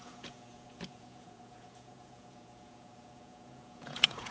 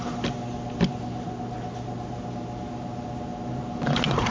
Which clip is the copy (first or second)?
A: first